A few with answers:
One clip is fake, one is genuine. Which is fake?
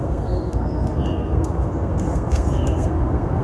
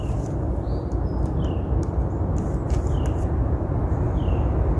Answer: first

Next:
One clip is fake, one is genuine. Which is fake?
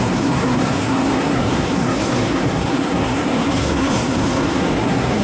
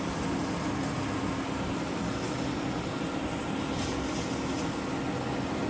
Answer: first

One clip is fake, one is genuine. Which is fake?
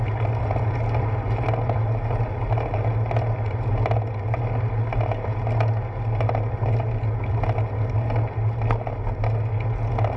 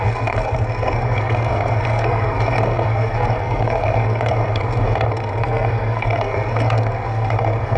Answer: second